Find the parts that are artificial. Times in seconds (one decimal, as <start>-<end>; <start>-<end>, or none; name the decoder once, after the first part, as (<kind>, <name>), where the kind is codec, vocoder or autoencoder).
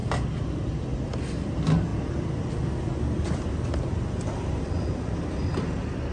none